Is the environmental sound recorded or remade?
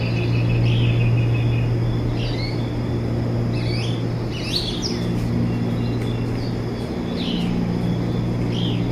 recorded